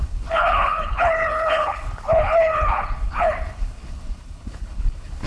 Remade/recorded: remade